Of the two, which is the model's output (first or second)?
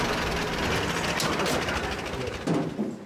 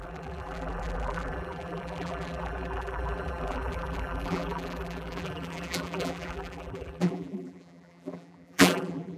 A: second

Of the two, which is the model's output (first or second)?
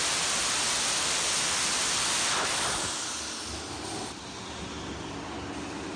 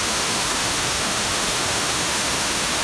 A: second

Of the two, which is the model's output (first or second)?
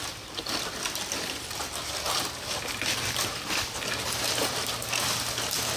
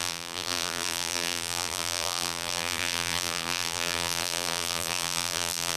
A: second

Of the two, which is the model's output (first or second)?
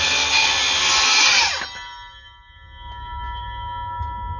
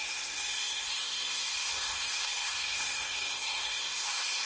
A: second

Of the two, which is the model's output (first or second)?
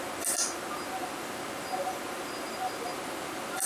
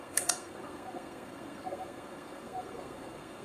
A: second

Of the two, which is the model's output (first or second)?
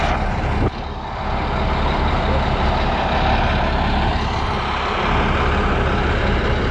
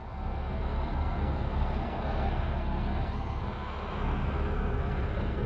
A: second